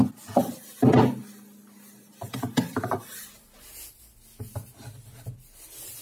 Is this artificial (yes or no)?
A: no